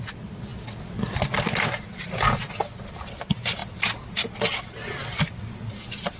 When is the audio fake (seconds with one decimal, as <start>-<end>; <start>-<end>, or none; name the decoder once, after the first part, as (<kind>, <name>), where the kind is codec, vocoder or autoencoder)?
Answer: none